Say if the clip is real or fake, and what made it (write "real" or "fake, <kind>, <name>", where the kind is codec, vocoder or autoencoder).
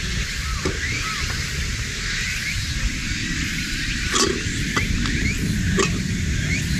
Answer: real